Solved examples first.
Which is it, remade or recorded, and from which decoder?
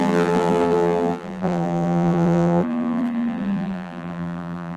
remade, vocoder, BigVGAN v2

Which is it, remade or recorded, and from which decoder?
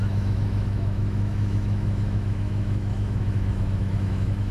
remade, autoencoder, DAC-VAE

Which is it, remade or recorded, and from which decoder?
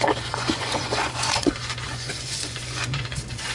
remade, vocoder, Vocos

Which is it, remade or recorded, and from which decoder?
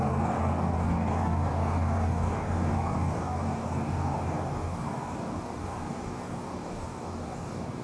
remade, codec, DAC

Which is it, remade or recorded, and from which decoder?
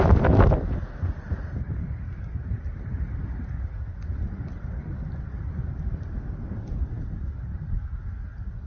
recorded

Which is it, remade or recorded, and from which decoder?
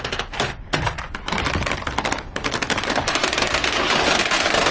recorded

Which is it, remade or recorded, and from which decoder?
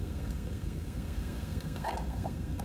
remade, codec, SNAC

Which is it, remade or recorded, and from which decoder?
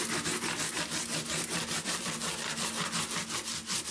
recorded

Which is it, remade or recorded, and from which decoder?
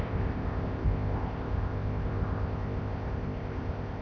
remade, codec, ZipCodec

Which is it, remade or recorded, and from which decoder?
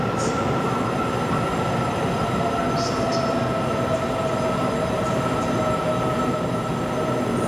recorded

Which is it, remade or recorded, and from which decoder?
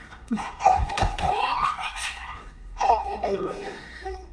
remade, codec, SNAC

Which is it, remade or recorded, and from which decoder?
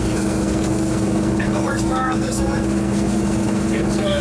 remade, codec, SNAC